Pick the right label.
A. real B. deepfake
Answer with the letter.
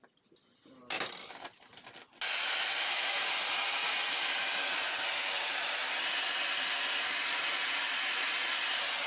A